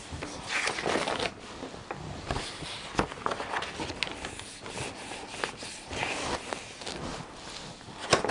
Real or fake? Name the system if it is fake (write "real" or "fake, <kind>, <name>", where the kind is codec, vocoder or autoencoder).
real